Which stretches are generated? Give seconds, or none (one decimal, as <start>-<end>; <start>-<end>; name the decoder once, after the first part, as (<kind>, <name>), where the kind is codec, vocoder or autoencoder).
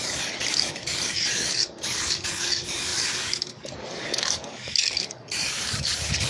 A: 0.0-6.3 (codec, DAC)